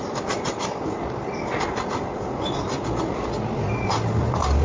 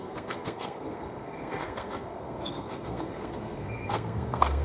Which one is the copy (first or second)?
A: second